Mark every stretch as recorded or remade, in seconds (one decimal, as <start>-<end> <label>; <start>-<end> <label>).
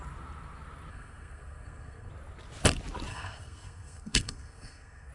0.0-0.9 recorded; 0.9-2.1 remade; 2.1-3.1 recorded; 3.1-5.1 remade